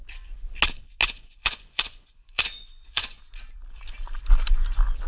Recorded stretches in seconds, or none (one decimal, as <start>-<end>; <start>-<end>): 0.0-1.0; 3.2-5.1